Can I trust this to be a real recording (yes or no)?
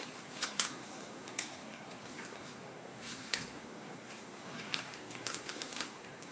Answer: no